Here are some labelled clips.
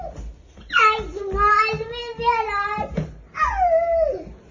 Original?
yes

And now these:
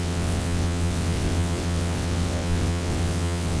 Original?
no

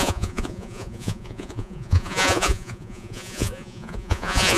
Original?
no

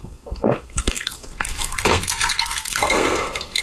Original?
no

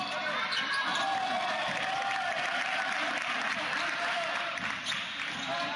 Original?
yes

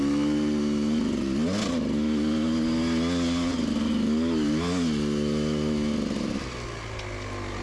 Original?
yes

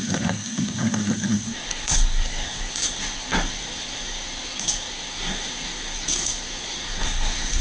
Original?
no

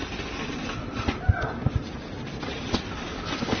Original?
no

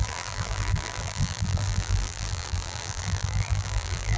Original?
no